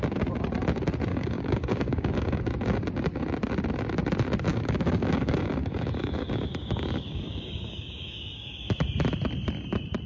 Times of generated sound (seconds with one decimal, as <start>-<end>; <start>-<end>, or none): 1.1-2.4; 4.5-8.7